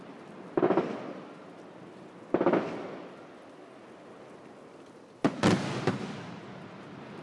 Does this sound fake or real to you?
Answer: real